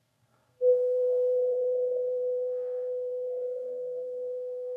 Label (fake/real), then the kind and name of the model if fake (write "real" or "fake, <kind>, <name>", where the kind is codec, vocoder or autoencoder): fake, codec, SNAC